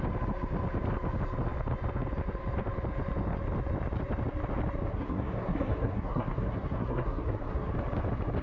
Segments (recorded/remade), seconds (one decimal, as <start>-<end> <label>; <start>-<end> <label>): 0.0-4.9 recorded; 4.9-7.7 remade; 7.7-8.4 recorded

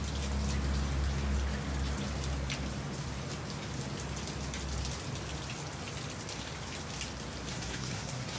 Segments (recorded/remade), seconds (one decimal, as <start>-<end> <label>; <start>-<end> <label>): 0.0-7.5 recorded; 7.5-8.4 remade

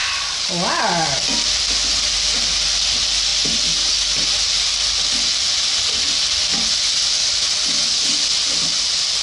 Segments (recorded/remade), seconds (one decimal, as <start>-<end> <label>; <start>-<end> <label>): 0.0-9.2 recorded

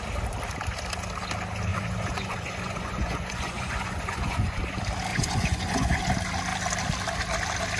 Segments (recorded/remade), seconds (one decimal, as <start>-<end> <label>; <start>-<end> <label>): 0.0-1.7 recorded; 1.7-4.6 remade; 4.6-5.1 recorded; 5.1-6.0 remade; 6.0-7.8 recorded

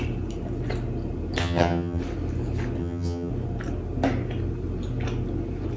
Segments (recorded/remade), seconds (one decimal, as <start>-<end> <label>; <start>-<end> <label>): 0.0-1.4 recorded; 1.4-2.0 remade; 2.0-2.8 recorded; 2.8-3.3 remade; 3.3-5.8 recorded